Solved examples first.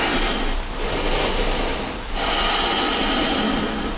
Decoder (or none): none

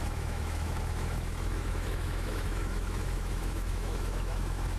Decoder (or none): autoencoder, DAC-VAE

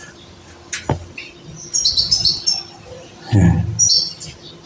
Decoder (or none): none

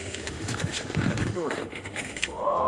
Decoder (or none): autoencoder, DAC-VAE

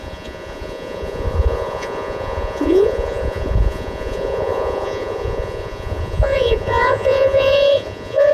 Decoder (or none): vocoder, Vocos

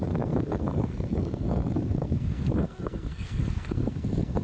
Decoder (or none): codec, SNAC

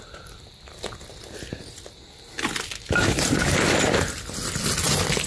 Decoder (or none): none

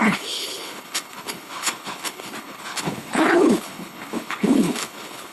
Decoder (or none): codec, HILCodec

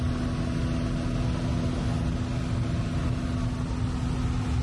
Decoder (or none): none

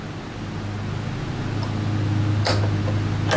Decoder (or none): none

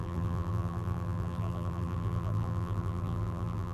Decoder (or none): vocoder, BigVGAN v2